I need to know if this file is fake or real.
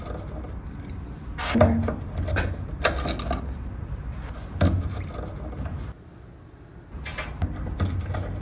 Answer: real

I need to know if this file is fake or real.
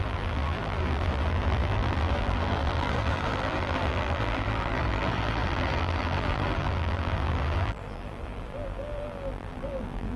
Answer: fake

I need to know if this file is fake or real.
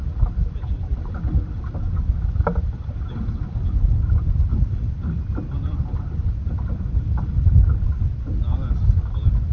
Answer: real